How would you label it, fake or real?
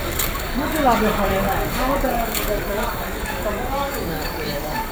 fake